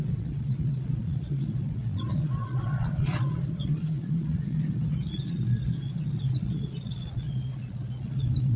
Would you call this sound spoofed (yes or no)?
yes